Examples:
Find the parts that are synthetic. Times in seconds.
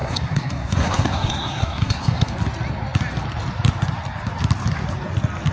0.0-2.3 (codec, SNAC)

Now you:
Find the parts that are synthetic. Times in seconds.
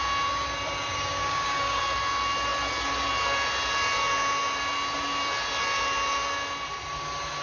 0.9-1.8 (codec, DAC)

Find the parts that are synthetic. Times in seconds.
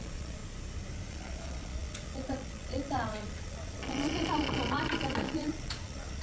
0.0-0.4 (vocoder, Vocos); 1.1-6.2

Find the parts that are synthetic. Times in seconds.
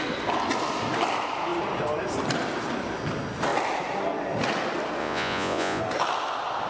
5.0-5.8 (vocoder, Vocos)